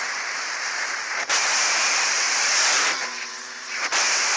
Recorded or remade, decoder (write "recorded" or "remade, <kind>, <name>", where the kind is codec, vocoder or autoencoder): recorded